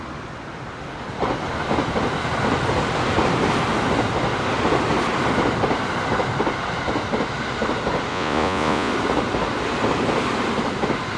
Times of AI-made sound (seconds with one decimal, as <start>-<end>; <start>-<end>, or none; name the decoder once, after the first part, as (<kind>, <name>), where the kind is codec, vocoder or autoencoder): 8.1-8.9 (vocoder, Vocos)